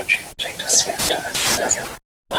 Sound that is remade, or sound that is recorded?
recorded